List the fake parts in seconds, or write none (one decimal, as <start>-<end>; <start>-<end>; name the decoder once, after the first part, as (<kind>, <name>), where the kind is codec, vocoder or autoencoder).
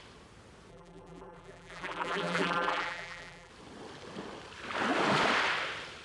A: 0.7-3.5 (vocoder, BigVGAN v2)